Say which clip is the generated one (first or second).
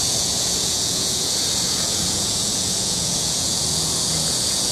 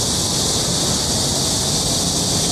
first